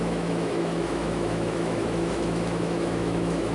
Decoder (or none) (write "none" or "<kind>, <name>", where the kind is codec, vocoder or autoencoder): autoencoder, DAC-VAE